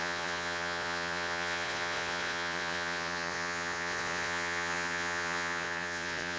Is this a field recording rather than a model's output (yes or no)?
no